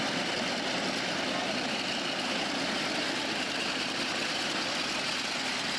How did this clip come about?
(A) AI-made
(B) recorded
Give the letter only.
B